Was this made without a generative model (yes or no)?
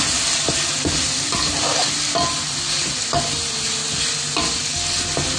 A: yes